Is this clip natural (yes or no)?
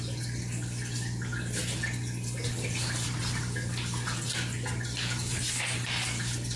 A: yes